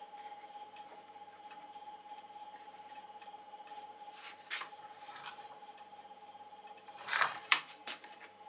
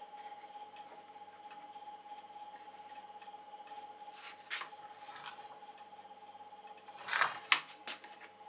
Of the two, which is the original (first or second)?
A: second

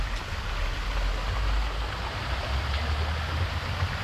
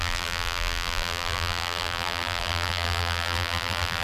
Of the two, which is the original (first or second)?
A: first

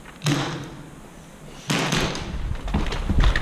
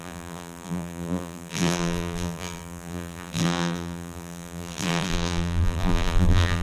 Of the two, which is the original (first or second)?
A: first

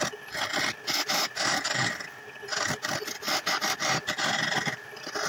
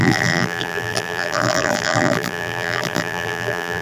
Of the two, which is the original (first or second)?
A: first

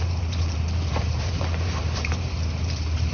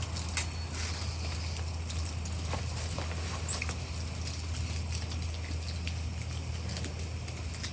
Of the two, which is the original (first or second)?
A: second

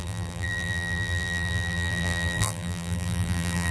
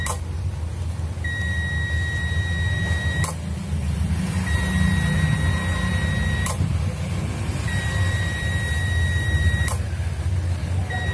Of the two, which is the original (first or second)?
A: second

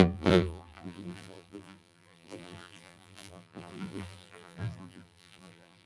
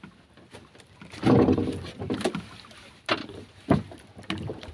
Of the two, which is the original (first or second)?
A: second